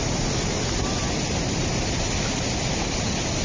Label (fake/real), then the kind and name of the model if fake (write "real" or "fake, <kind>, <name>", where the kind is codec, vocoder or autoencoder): real